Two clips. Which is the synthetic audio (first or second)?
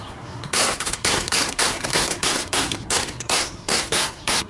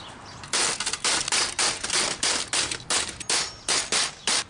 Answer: first